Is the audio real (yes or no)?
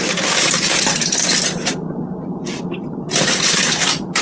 no